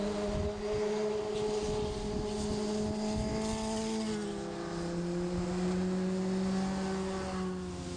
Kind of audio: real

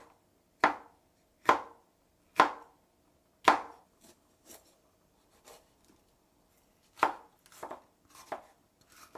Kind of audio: real